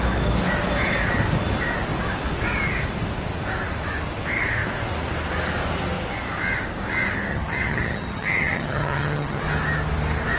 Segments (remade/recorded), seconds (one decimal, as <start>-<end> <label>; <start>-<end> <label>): 0.0-7.3 recorded; 7.3-9.4 remade; 9.4-10.4 recorded